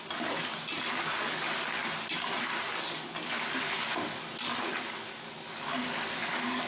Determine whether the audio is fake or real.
real